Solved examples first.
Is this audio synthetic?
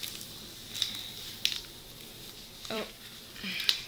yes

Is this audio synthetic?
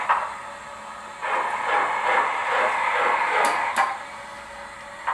no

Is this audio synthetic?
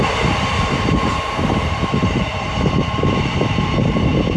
yes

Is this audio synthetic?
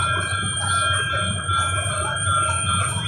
no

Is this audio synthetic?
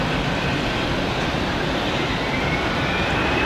no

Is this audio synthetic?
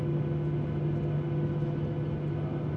no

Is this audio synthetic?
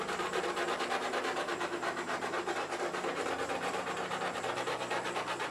yes